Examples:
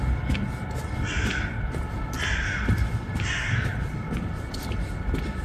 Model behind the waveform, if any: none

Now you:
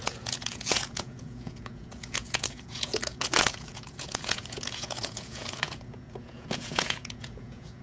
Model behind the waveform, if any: vocoder, Vocos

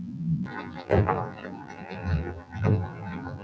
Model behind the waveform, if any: vocoder, BigVGAN v2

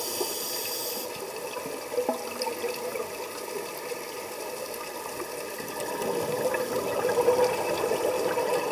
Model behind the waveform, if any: none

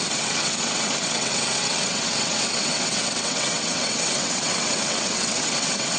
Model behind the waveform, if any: vocoder, WaveNeXt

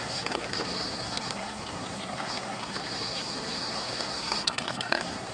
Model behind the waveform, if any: codec, SNAC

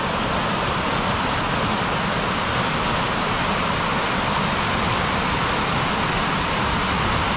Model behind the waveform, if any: none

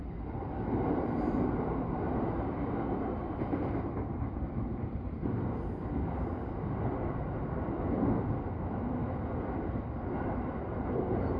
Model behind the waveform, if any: none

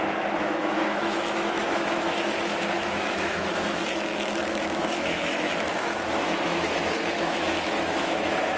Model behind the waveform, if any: autoencoder, DAC-VAE